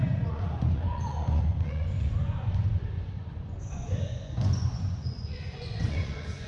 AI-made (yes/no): yes